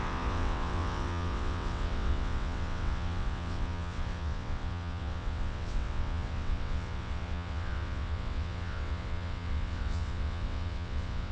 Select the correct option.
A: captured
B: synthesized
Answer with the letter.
B